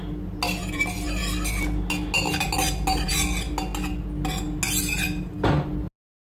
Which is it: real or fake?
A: real